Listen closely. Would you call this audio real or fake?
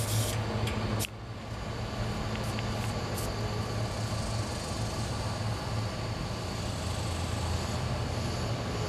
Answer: real